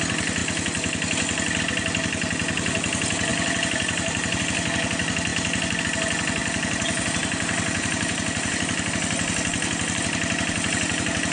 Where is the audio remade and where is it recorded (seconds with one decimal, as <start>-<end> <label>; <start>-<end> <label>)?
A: 0.0-3.3 recorded; 3.3-4.4 remade; 4.4-6.4 recorded; 6.4-8.9 remade; 8.9-11.3 recorded